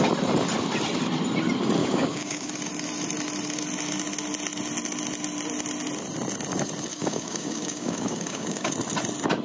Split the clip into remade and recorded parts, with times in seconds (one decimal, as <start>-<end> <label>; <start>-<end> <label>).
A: 0.0-1.8 recorded; 1.8-2.5 remade; 2.5-6.9 recorded; 6.9-8.7 remade; 8.7-9.4 recorded